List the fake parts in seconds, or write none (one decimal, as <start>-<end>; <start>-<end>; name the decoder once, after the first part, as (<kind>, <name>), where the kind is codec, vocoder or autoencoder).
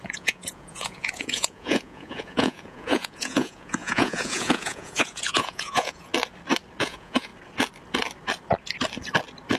0.0-6.1 (vocoder, Vocos); 6.8-7.3